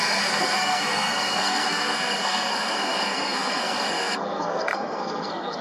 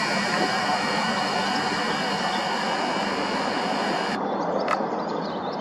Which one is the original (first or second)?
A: second